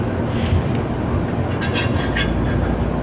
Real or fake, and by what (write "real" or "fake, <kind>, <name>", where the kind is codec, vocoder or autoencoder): real